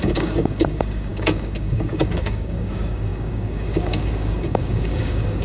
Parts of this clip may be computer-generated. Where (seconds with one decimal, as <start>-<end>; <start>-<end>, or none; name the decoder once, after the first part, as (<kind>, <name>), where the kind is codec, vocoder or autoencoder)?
0.0-5.4 (codec, DAC)

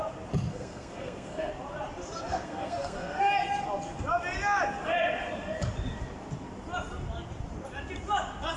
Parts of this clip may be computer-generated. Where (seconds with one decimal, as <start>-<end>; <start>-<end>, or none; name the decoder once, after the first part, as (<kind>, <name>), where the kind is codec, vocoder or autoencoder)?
0.5-1.5 (codec, SNAC); 2.3-3.3